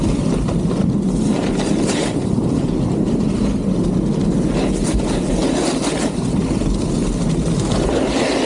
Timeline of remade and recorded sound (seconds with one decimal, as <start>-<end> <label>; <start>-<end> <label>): 0.0-8.5 recorded